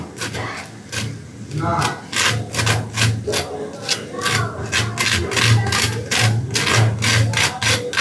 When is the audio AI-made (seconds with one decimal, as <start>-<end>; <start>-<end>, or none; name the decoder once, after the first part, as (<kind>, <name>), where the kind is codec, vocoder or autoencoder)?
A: none